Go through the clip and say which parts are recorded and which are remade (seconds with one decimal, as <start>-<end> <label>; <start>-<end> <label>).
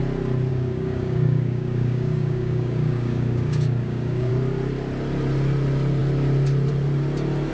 0.0-0.5 recorded; 0.5-4.3 remade; 4.3-7.5 recorded